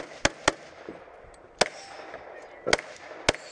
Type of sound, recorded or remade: recorded